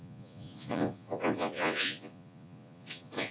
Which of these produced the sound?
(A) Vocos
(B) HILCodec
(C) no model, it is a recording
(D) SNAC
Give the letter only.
A